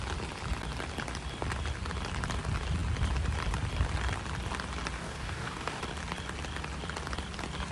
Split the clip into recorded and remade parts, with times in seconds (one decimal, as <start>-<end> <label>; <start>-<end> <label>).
0.0-5.0 recorded; 5.0-5.8 remade; 5.8-7.7 recorded